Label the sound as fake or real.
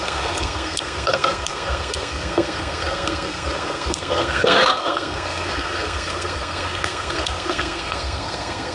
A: fake